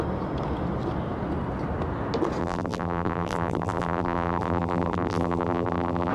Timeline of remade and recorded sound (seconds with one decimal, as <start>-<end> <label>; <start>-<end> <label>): 0.0-2.4 recorded; 2.4-6.1 remade